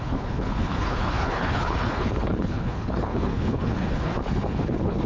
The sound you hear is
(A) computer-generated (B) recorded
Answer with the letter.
A